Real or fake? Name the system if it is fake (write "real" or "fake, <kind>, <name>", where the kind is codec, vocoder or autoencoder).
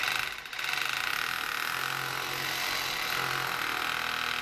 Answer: real